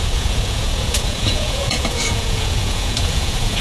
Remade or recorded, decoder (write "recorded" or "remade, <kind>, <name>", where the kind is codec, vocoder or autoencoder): remade, vocoder, Vocos